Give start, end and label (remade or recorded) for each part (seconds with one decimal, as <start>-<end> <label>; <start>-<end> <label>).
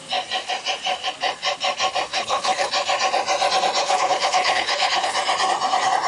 0.0-2.1 recorded; 2.1-2.7 remade; 2.7-3.8 recorded; 3.8-5.1 remade; 5.1-6.1 recorded